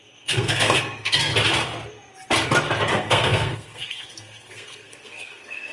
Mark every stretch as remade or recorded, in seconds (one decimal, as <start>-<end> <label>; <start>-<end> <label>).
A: 0.0-1.3 remade; 1.3-2.9 recorded; 2.9-5.7 remade